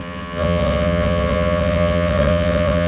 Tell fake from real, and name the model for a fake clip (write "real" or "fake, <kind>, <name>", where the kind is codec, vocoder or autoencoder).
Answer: fake, vocoder, WaveNeXt